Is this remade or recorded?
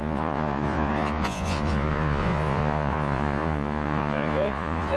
remade